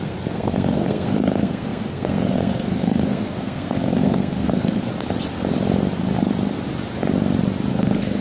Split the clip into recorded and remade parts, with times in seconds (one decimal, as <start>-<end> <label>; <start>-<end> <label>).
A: 0.0-4.9 remade; 4.9-7.7 recorded; 7.7-8.2 remade